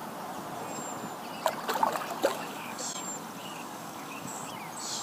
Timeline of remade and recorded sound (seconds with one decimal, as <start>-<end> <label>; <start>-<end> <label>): 0.0-2.3 recorded; 2.3-2.8 remade; 2.8-3.4 recorded; 3.4-4.5 remade; 4.5-5.0 recorded